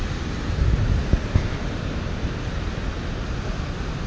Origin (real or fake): real